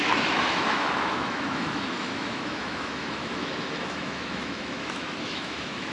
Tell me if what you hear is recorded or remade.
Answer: remade